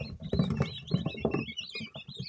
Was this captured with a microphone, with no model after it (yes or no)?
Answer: yes